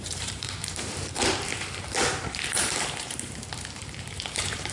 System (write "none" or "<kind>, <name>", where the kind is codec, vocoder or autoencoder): vocoder, BigVGAN v2